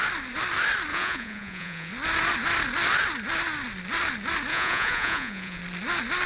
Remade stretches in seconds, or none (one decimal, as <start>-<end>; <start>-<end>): 0.9-1.9; 4.5-5.6